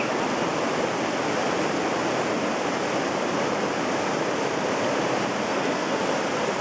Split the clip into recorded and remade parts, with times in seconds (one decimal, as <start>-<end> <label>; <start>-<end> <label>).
0.0-5.5 recorded; 5.5-6.0 remade; 6.0-6.6 recorded